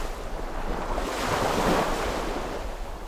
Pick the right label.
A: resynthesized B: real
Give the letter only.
A